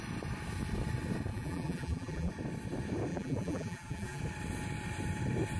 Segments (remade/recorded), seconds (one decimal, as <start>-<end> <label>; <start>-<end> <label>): 0.0-1.3 recorded; 1.3-2.3 remade; 2.3-3.1 recorded; 3.1-4.2 remade; 4.2-5.6 recorded